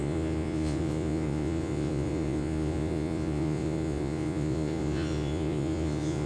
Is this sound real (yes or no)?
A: no